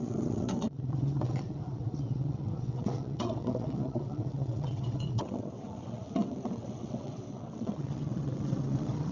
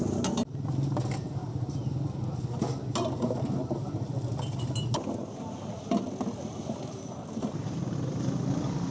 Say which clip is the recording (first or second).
second